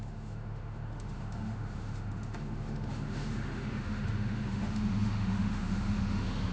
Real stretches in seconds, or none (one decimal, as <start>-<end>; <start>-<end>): none